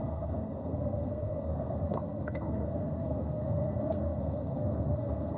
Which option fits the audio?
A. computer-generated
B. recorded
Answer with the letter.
A